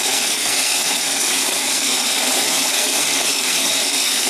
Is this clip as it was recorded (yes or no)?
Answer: no